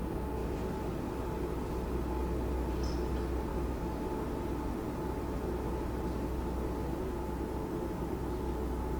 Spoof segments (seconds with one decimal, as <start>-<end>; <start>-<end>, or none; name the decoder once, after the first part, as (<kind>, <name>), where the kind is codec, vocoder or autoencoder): 3.5-4.0 (autoencoder, DAC-VAE)